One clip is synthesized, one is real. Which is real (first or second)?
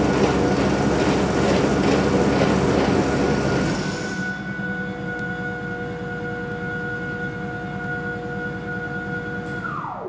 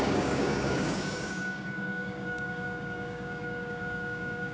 first